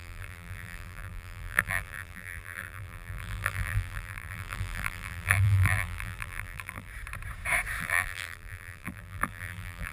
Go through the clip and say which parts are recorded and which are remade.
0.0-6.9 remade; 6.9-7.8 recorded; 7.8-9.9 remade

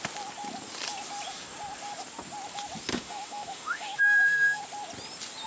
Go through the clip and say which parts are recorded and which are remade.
0.0-2.9 recorded; 2.9-4.6 remade; 4.6-5.5 recorded

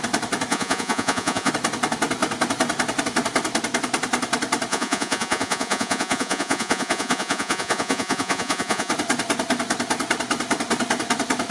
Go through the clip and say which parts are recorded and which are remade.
0.0-0.5 recorded; 0.5-1.5 remade; 1.5-4.7 recorded; 4.7-8.9 remade; 8.9-11.5 recorded